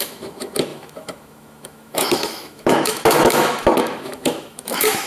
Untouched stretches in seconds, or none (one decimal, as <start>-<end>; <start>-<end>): none